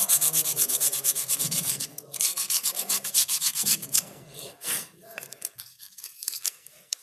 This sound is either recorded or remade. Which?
remade